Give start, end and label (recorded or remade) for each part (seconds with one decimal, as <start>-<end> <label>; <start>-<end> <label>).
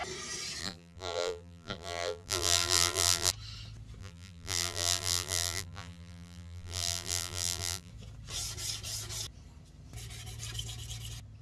0.0-0.6 recorded; 0.6-3.3 remade; 3.3-4.0 recorded; 4.0-7.9 remade; 7.9-11.4 recorded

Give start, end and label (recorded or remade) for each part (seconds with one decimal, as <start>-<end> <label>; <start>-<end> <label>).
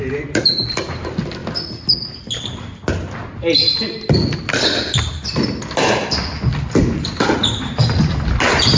0.0-8.8 recorded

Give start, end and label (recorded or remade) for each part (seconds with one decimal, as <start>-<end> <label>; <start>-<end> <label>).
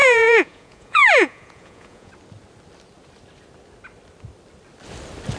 0.0-2.1 remade; 2.1-5.4 recorded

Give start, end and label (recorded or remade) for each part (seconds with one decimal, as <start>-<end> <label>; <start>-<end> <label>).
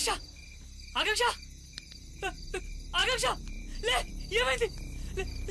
0.0-2.6 remade; 2.6-3.0 recorded; 3.0-4.1 remade; 4.1-5.5 recorded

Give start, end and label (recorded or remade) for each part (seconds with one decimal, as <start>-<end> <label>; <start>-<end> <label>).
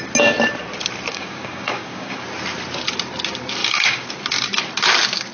0.0-1.1 recorded; 1.1-2.2 remade; 2.2-3.6 recorded; 3.6-4.1 remade; 4.1-5.3 recorded